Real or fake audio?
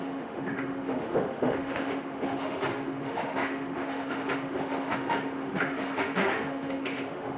fake